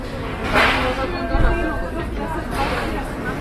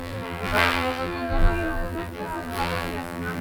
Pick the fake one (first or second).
second